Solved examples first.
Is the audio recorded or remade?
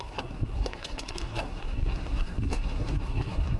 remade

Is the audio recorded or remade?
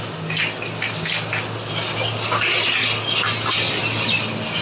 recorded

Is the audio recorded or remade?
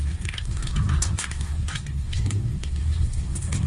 remade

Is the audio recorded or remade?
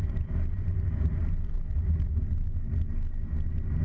recorded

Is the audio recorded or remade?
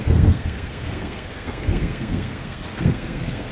remade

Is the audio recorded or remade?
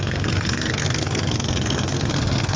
remade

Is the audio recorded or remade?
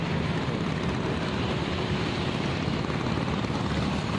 recorded